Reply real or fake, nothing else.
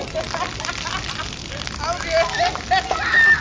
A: real